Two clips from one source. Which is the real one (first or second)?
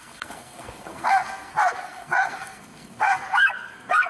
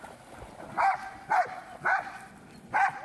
second